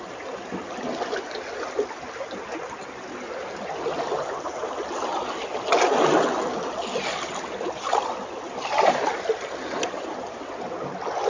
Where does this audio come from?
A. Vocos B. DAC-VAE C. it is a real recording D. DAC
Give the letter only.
C